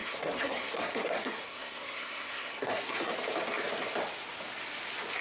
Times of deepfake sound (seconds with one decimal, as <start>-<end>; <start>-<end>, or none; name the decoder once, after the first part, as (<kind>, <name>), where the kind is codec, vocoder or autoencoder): 0.0-3.1 (codec, SNAC)